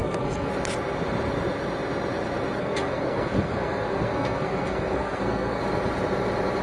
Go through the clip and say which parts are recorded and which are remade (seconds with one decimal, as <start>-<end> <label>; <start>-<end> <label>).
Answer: 0.0-0.5 remade; 0.5-2.6 recorded; 2.6-5.6 remade; 5.6-6.6 recorded